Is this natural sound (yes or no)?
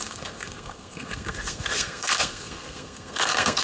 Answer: no